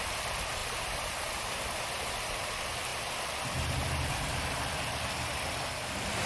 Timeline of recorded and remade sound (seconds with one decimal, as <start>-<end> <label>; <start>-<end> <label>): 0.0-6.3 recorded